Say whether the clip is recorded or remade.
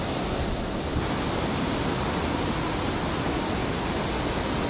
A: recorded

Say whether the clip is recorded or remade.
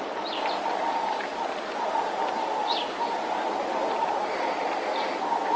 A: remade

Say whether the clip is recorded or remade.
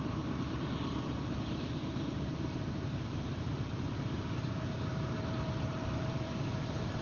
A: remade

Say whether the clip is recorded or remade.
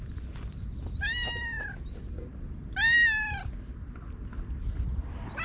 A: recorded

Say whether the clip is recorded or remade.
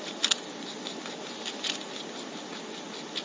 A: recorded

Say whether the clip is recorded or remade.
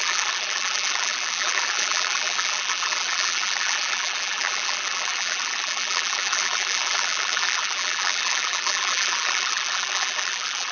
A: remade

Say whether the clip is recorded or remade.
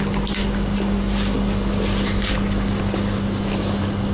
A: recorded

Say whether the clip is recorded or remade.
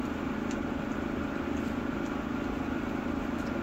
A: recorded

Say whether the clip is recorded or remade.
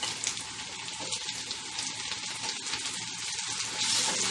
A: recorded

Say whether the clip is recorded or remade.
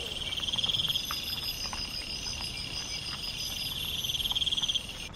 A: recorded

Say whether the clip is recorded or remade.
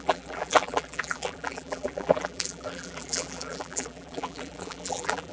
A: remade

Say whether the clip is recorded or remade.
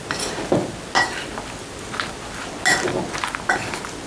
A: recorded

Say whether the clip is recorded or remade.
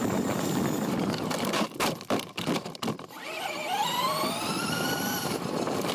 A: remade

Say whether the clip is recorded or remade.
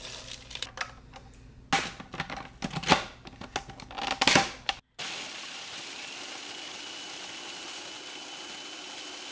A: recorded